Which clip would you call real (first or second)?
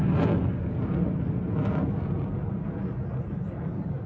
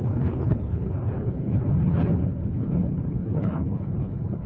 first